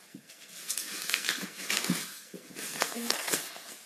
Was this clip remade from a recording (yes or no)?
yes